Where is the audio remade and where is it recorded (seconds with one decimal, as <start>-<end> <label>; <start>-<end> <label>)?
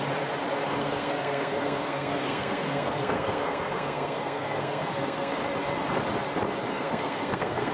0.0-0.8 recorded; 0.8-5.4 remade; 5.4-6.7 recorded; 6.7-7.7 remade